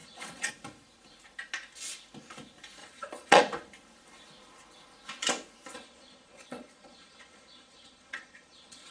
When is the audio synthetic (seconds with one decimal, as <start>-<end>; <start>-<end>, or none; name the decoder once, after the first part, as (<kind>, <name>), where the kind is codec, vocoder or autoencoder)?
0.0-0.5 (vocoder, Vocos); 2.8-3.4; 5.7-8.9